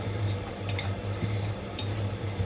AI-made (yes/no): yes